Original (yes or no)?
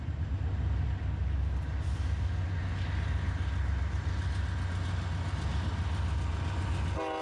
yes